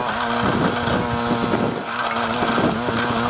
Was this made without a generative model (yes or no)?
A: yes